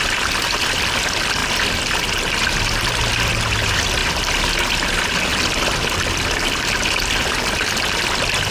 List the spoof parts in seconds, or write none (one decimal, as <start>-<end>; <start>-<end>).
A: 0.0-1.4; 3.1-8.5